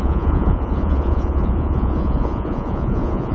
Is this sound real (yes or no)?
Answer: no